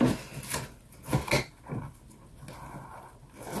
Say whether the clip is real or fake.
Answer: real